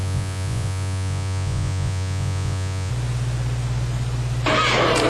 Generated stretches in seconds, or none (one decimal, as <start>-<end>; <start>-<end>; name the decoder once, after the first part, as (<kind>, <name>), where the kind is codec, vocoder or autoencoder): 0.0-2.9 (vocoder, Vocos)